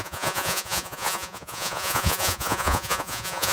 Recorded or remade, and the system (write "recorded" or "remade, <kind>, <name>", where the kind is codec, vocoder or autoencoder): remade, vocoder, Vocos